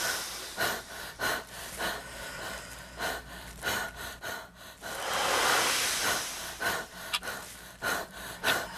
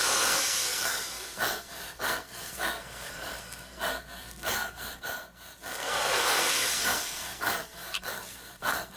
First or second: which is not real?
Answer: second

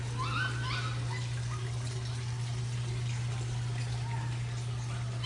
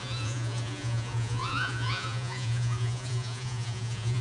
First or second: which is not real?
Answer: second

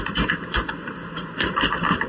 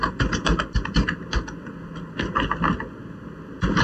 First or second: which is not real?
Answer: first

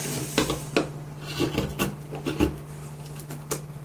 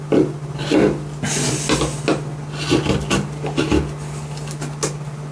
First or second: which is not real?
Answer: first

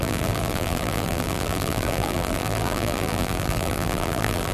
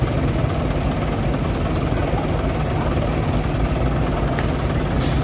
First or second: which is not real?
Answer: first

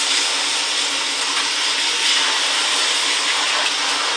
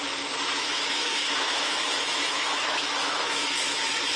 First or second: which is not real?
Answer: second